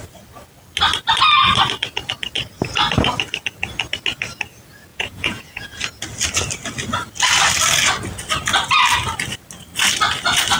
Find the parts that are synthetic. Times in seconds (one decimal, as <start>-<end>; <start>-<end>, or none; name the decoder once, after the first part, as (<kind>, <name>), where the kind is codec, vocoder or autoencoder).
4.9-5.8 (vocoder, Vocos)